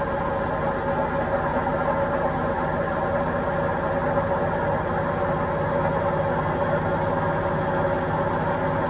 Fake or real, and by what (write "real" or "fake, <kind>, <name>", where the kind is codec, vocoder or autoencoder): real